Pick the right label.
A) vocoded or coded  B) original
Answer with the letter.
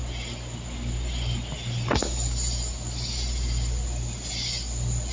B